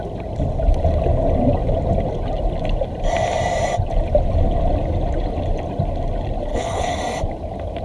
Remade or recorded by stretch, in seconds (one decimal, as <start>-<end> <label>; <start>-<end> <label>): 0.0-6.5 recorded; 6.5-7.0 remade; 7.0-7.8 recorded